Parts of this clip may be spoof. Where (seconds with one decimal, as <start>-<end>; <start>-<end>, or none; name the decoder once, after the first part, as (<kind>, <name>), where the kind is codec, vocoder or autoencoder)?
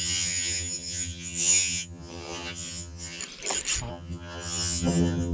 0.0-3.2 (vocoder, HiFi-GAN); 3.9-5.3